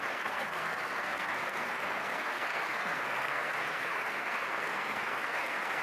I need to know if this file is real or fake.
fake